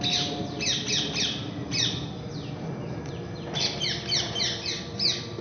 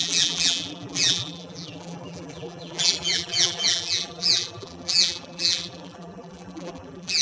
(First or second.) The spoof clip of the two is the second